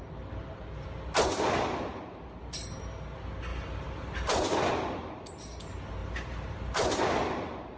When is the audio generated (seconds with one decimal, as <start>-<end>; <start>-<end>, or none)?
3.5-4.7; 6.0-7.0